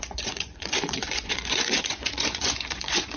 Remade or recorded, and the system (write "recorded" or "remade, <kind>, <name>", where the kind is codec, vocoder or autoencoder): remade, vocoder, Vocos